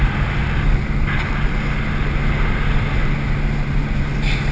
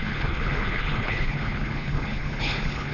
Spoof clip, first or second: second